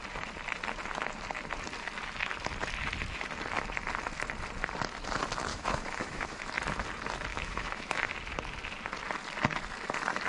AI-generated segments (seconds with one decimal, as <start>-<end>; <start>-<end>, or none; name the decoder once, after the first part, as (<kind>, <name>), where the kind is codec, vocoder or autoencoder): 5.5-6.5 (autoencoder, DAC-VAE); 7.3-8.1